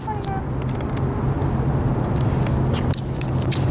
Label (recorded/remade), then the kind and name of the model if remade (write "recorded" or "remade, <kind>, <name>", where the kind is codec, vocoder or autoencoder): recorded